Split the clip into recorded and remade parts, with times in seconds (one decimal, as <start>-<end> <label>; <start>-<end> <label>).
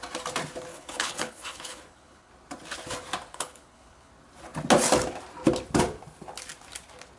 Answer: 0.0-0.7 recorded; 0.7-2.3 remade; 2.3-3.3 recorded; 3.3-4.1 remade; 4.1-7.2 recorded